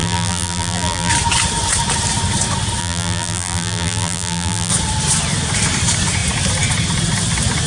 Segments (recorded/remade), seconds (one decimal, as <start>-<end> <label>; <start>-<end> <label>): 0.0-1.1 remade; 1.1-2.8 recorded; 2.8-4.7 remade; 4.7-7.7 recorded